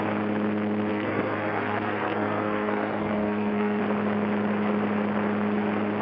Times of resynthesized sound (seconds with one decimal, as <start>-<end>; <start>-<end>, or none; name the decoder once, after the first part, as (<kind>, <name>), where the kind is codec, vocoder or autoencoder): 0.9-3.8 (codec, SNAC)